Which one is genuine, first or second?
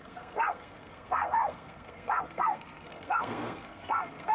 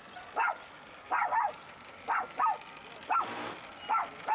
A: second